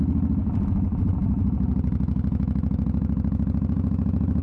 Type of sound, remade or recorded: recorded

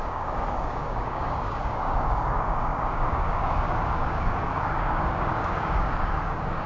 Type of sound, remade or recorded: remade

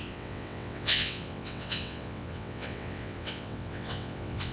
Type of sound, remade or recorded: remade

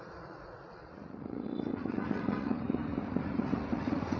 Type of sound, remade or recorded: remade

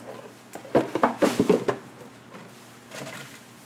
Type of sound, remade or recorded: recorded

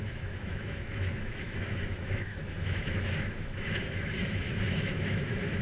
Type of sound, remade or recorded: remade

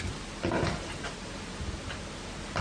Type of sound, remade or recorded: recorded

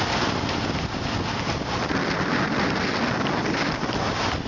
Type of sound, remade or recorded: recorded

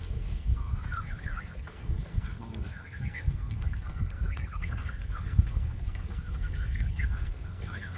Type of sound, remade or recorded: remade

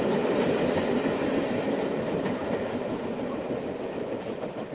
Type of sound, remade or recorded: recorded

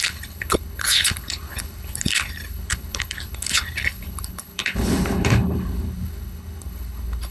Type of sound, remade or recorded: remade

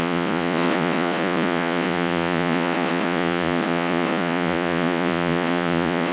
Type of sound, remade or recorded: remade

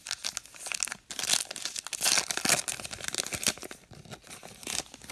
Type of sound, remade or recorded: recorded